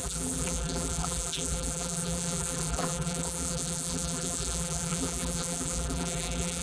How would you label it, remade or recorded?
remade